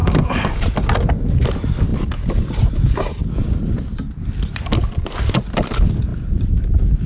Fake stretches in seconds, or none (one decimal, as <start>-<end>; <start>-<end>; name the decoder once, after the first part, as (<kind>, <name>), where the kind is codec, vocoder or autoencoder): 0.0-0.6 (codec, DAC)